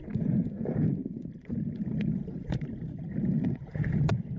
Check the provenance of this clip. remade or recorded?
remade